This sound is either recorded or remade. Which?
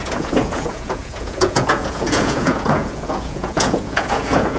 remade